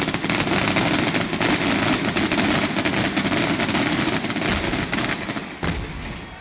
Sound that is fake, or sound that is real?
real